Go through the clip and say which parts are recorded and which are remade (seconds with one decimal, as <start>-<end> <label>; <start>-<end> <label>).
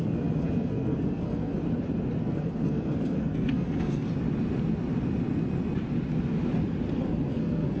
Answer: 0.0-1.5 remade; 1.5-2.2 recorded; 2.2-4.1 remade; 4.1-7.3 recorded; 7.3-7.8 remade